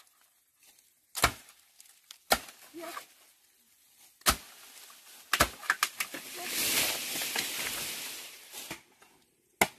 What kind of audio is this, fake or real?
real